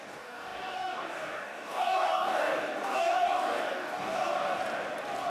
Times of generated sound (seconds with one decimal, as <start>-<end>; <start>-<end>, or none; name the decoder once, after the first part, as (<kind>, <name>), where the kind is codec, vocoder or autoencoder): 0.0-4.5 (codec, DAC)